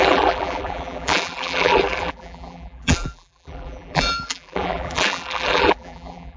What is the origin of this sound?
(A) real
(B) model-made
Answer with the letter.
B